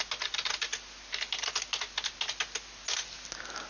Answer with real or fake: real